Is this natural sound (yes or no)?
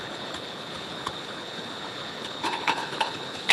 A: no